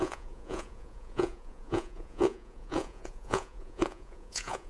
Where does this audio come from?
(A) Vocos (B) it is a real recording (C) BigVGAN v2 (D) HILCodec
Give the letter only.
A